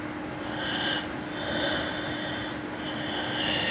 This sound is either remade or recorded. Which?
recorded